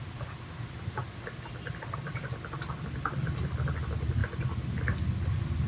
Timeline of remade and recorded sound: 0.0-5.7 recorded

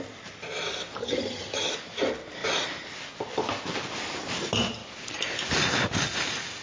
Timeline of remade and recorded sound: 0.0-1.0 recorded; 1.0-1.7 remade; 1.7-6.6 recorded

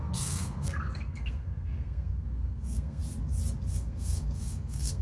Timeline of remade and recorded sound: 0.0-3.0 remade; 3.0-3.7 recorded; 3.7-5.0 remade